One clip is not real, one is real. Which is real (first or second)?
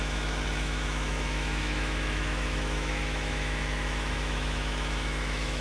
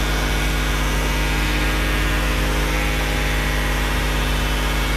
second